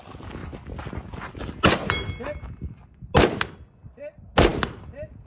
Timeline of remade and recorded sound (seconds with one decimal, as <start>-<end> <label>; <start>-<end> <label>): 0.0-5.3 recorded